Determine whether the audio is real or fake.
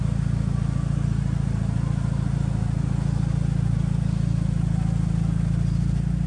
real